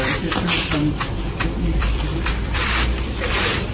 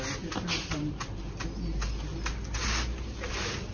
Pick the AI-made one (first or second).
first